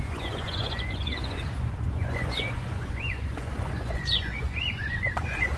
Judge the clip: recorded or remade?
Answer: remade